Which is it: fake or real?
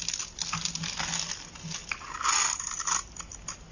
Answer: real